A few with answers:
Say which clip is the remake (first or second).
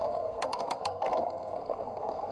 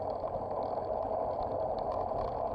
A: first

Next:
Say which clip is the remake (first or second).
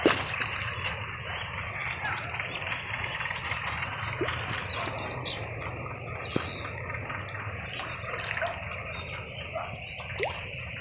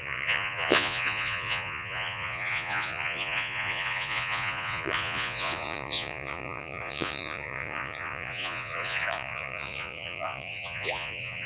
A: second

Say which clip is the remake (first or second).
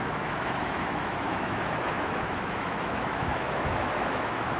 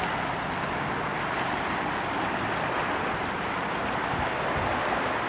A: first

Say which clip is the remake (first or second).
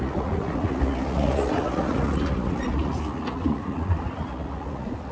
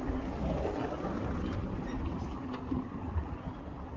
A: first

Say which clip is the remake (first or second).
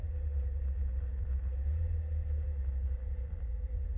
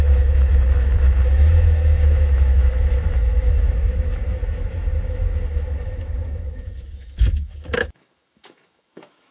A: second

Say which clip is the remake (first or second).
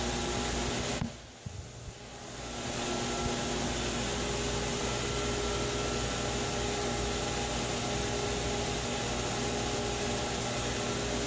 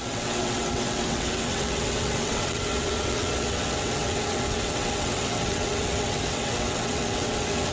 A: second